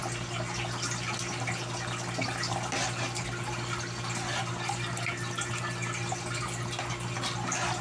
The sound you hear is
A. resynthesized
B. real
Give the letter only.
B